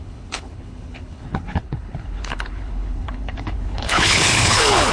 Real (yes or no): no